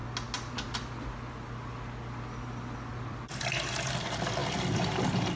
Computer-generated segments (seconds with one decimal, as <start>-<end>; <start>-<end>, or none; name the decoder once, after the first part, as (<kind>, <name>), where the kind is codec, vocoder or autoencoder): 2.9-3.5 (vocoder, BigVGAN v2); 4.4-5.4